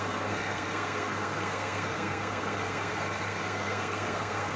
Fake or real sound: fake